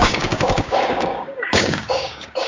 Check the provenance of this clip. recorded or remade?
remade